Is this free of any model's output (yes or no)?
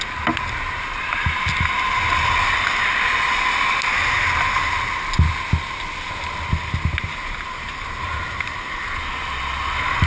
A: yes